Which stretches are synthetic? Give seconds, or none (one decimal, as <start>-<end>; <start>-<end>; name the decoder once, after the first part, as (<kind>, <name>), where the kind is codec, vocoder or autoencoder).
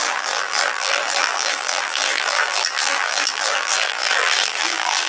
0.0-5.1 (vocoder, BigVGAN v2)